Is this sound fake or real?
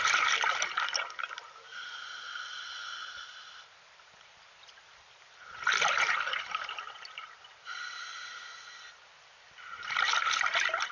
real